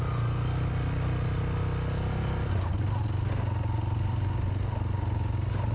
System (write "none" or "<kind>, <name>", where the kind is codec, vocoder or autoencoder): none